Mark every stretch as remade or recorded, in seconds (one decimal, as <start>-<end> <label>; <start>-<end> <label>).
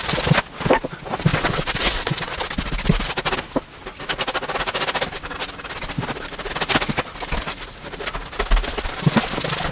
0.0-1.3 recorded; 1.3-2.3 remade; 2.3-9.7 recorded